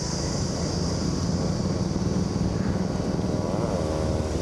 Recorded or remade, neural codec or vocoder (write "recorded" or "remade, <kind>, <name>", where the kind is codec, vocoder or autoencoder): recorded